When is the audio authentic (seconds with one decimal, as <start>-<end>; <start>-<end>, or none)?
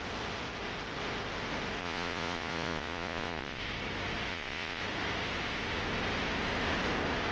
0.0-1.8; 3.6-4.3; 4.8-7.3